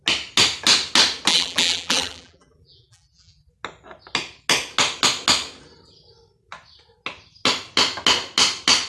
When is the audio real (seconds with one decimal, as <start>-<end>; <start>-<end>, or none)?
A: 0.0-1.3; 3.5-8.9